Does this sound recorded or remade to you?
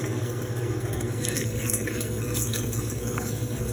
remade